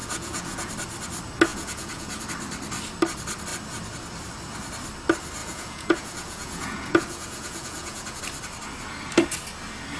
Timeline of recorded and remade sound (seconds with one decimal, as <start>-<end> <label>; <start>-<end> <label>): 0.0-0.7 remade; 0.7-1.5 recorded; 1.5-2.2 remade; 2.2-5.4 recorded; 5.4-8.2 remade; 8.2-10.0 recorded